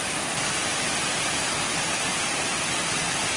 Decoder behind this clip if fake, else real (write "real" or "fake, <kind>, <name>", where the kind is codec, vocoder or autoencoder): real